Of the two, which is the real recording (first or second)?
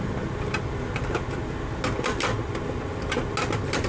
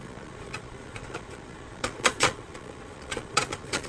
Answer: first